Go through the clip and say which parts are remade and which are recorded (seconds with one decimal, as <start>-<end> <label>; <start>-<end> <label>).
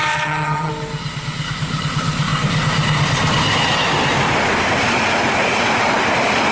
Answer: 0.0-0.7 remade; 0.7-6.5 recorded